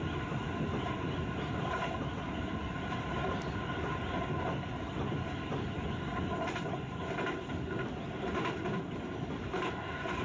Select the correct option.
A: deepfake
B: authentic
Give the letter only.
B